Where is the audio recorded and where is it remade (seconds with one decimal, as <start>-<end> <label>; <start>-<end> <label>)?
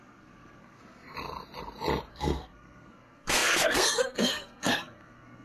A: 0.0-0.8 remade; 0.8-2.1 recorded; 2.1-5.4 remade